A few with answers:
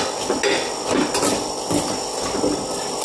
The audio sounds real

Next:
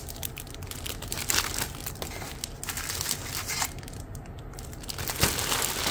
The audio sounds real